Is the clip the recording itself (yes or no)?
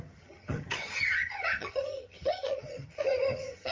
no